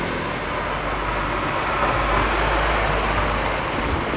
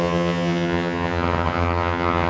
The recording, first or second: first